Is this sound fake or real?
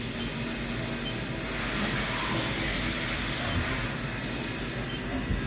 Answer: real